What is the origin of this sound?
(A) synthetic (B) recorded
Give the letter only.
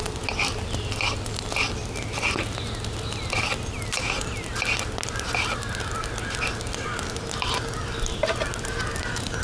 B